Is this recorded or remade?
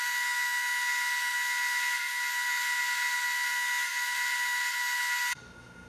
remade